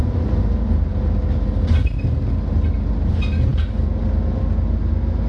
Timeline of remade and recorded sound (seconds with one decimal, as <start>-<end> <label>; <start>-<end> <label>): 0.0-5.3 recorded